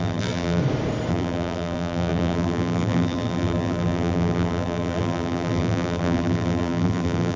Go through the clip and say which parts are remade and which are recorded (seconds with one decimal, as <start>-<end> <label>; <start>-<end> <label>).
0.0-0.6 remade; 0.6-1.1 recorded; 1.1-7.4 remade